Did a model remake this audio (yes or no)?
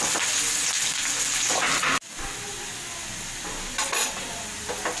no